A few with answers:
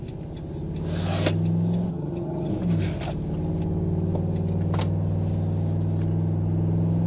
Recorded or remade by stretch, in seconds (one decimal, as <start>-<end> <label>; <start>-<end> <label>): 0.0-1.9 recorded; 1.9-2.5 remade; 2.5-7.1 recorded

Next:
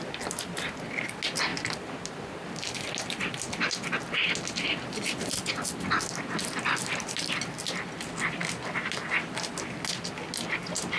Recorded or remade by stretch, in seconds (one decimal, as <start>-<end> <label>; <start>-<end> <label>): 0.0-11.0 recorded

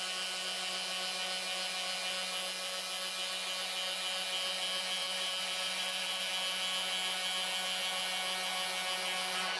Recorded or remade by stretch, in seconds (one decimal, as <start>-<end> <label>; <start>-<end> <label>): 0.0-5.0 recorded; 5.0-6.2 remade; 6.2-9.6 recorded

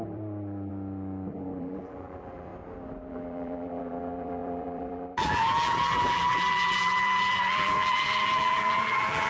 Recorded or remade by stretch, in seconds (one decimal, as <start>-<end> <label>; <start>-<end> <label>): 0.0-0.7 remade; 0.7-1.3 recorded; 1.3-2.5 remade; 2.5-3.1 recorded; 3.1-9.3 remade

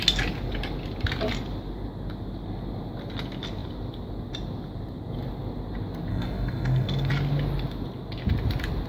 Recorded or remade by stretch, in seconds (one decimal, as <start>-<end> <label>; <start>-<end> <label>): 0.0-6.1 recorded; 6.1-7.1 remade; 7.1-8.9 recorded

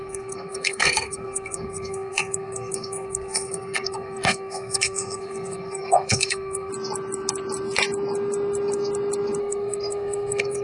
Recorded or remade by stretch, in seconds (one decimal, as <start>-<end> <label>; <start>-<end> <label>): 0.0-6.7 remade; 6.7-9.4 recorded; 9.4-10.6 remade

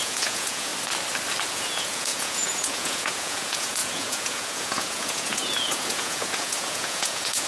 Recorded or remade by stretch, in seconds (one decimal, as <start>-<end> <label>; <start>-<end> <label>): 0.0-0.7 remade; 0.7-1.5 recorded; 1.5-7.5 remade

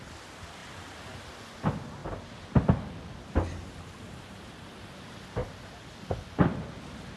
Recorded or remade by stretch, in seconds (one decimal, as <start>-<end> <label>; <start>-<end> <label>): 0.0-2.0 recorded; 2.0-3.0 remade; 3.0-5.4 recorded; 5.4-6.3 remade; 6.3-7.2 recorded